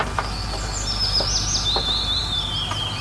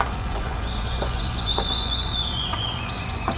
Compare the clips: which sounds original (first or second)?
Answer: first